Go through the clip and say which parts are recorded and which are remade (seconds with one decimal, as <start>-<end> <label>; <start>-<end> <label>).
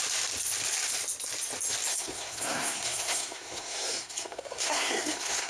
0.0-1.9 recorded; 1.9-5.5 remade